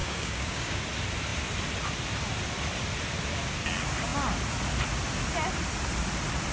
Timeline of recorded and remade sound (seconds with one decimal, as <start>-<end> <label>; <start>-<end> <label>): 0.0-0.8 remade; 0.8-6.5 recorded